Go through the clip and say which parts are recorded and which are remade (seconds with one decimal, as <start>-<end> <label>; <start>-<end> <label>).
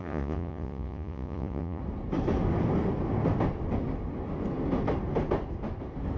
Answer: 0.0-1.8 remade; 1.8-6.2 recorded